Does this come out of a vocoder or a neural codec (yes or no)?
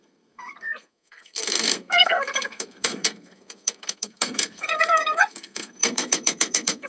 yes